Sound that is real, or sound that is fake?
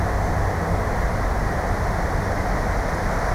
real